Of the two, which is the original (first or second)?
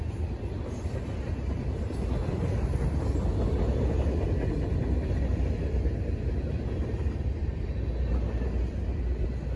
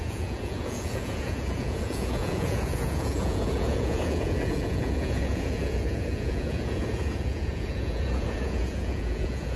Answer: first